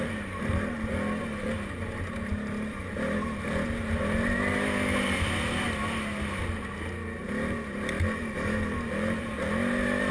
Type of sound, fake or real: real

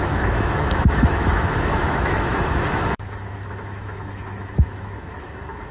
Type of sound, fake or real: fake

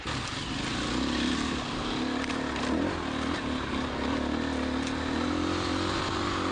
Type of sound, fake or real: real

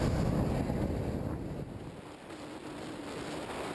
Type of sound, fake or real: real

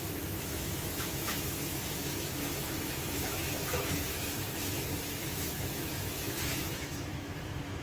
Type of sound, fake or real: fake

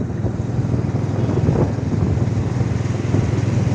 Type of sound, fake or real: real